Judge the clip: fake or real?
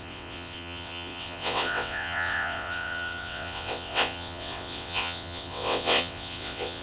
fake